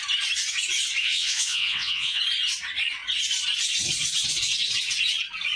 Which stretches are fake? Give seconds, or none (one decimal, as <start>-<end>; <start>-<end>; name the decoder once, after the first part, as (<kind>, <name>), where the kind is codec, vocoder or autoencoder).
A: 1.0-2.2 (vocoder, WaveNeXt)